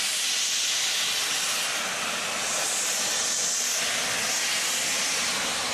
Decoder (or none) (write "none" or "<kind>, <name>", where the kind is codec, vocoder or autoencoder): none